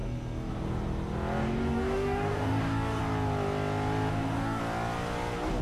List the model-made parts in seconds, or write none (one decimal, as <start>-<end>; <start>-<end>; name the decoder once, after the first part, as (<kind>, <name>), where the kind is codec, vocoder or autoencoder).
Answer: 1.4-3.0 (codec, DAC); 4.1-4.6

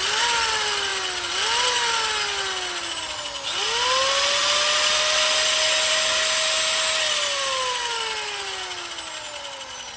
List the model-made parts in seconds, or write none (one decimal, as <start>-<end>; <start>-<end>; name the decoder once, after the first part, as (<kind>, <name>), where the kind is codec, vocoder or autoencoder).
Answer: none